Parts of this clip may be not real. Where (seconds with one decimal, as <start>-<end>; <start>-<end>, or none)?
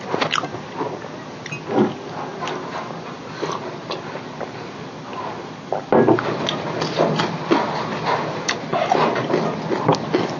none